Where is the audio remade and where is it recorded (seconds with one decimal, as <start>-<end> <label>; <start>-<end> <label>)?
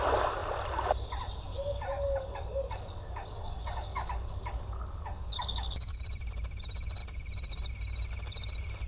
0.0-1.5 recorded; 1.5-6.0 remade; 6.0-8.9 recorded